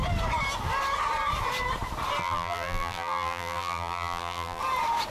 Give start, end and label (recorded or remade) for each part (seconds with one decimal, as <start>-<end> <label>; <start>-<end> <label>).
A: 0.0-2.2 recorded; 2.2-4.6 remade; 4.6-5.1 recorded